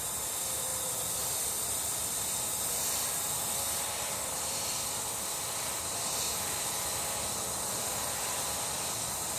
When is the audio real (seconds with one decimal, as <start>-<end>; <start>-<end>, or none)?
0.0-9.4